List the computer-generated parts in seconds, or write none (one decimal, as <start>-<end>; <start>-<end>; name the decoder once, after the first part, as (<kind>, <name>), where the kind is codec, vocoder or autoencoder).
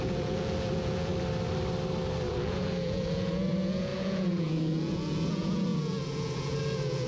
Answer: 0.0-1.1 (vocoder, Vocos); 2.3-7.1